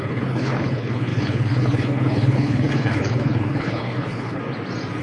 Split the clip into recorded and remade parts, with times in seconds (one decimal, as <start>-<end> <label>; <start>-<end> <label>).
0.0-4.4 remade; 4.4-5.0 recorded